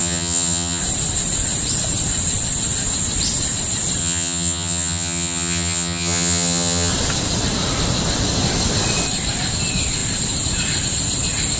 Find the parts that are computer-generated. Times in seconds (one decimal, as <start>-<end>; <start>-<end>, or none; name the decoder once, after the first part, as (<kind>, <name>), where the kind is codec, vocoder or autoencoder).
0.0-0.8 (vocoder, HiFi-GAN); 4.0-6.9